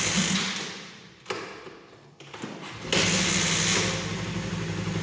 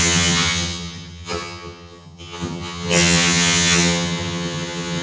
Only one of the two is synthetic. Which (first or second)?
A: second